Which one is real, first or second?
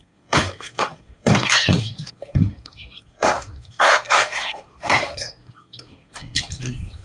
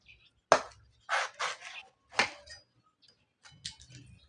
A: second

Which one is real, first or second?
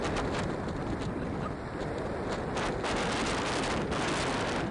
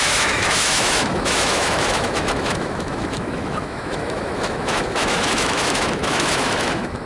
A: first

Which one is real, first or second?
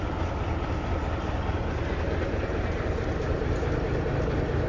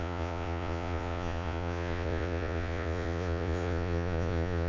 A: first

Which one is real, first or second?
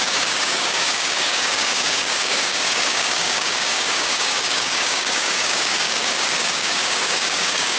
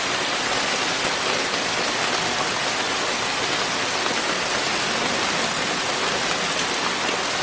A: second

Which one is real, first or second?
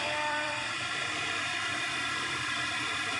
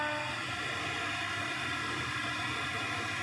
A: second